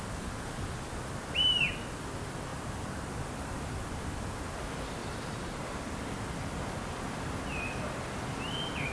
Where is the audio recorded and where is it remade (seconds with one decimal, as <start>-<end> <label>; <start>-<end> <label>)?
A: 0.0-2.5 recorded; 2.5-3.9 remade; 3.9-5.0 recorded; 5.0-6.1 remade; 6.1-8.9 recorded